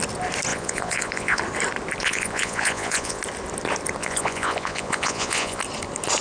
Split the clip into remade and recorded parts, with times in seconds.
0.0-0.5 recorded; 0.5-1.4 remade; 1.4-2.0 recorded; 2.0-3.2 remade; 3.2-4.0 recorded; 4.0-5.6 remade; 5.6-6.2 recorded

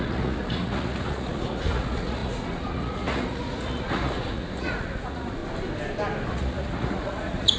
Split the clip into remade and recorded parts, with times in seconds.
0.0-5.4 remade; 5.4-6.3 recorded; 6.3-7.6 remade

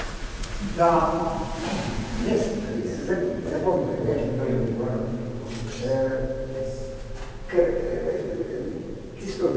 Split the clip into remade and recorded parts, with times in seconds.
0.0-4.2 remade; 4.2-8.1 recorded; 8.1-9.6 remade

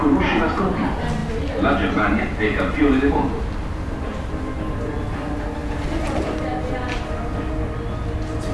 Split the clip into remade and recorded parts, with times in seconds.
0.0-8.5 recorded

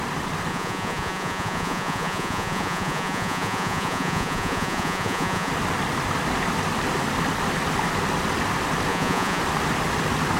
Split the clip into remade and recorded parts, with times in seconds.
0.0-0.5 recorded; 0.5-5.5 remade; 5.5-8.9 recorded; 8.9-9.4 remade; 9.4-10.4 recorded